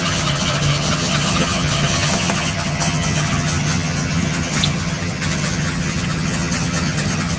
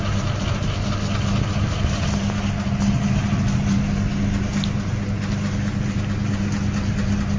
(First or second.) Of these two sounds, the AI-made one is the first